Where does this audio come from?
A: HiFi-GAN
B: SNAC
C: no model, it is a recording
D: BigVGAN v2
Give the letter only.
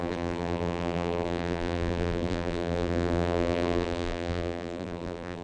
D